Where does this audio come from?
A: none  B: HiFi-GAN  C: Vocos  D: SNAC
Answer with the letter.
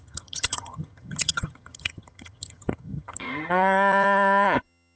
B